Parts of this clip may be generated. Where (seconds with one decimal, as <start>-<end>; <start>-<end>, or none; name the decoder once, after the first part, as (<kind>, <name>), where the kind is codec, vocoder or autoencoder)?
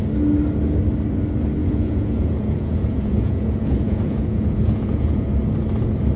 1.6-5.3 (vocoder, Vocos)